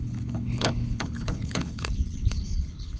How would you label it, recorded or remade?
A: remade